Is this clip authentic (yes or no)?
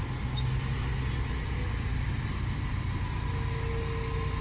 yes